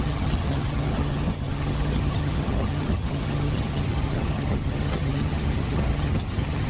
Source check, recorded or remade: remade